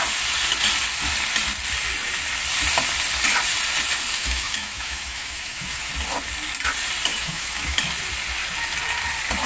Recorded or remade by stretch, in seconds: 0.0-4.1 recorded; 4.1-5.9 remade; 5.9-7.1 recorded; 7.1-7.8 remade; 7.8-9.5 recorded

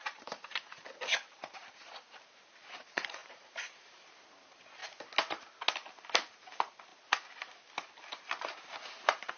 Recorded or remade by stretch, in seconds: 0.0-4.8 remade; 4.8-6.3 recorded; 6.3-6.9 remade; 6.9-8.1 recorded; 8.1-9.4 remade

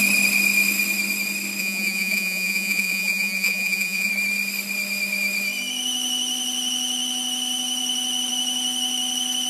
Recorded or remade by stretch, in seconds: 0.0-1.6 recorded; 1.6-4.1 remade; 4.1-9.5 recorded

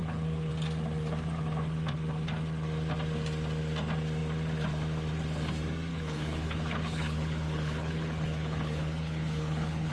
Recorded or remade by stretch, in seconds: 0.0-0.5 remade; 0.5-5.9 recorded; 5.9-9.9 remade

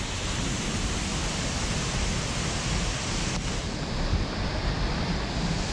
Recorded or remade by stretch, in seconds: 0.0-5.7 recorded

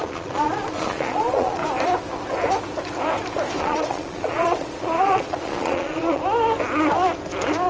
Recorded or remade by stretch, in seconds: 0.0-1.6 remade; 1.6-3.6 recorded; 3.6-6.2 remade; 6.2-7.7 recorded